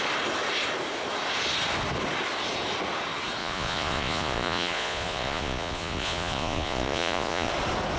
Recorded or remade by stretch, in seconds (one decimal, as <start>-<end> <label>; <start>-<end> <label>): 0.0-3.4 recorded; 3.4-7.5 remade; 7.5-8.0 recorded